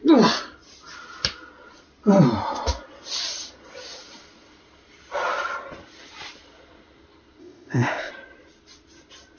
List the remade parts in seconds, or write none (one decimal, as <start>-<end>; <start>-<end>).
7.4-8.1